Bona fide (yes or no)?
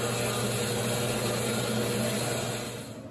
yes